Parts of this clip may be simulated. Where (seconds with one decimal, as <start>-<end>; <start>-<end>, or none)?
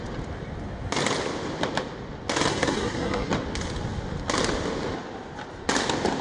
2.5-3.3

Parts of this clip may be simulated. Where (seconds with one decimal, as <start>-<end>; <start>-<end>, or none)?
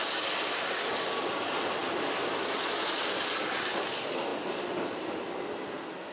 none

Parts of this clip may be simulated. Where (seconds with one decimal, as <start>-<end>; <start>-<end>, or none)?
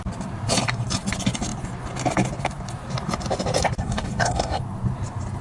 3.8-4.6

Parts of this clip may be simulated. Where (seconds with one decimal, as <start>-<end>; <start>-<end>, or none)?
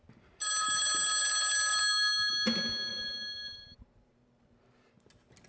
1.7-2.3; 2.9-4.9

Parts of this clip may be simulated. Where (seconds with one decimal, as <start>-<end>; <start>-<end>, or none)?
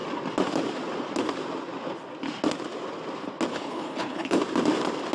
3.5-4.4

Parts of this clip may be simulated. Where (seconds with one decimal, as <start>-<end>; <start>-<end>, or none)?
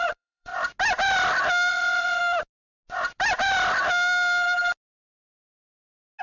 0.0-0.5; 1.7-2.2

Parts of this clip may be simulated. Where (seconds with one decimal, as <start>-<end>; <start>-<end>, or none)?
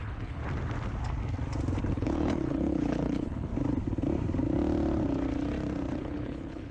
0.0-0.4; 1.9-3.5; 6.0-6.7